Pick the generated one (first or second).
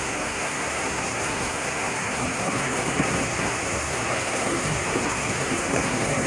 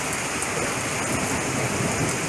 first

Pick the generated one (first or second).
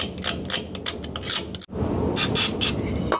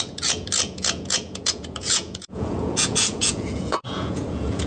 second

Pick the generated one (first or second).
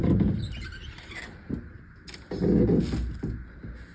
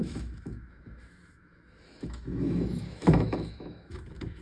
second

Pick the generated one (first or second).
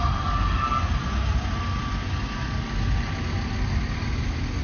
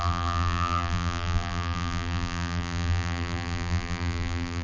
second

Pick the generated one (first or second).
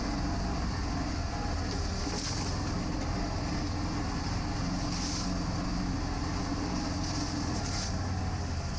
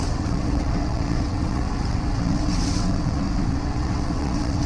second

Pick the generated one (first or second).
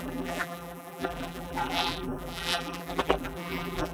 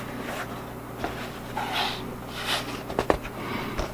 first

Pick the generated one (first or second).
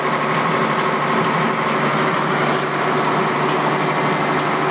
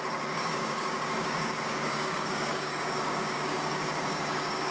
second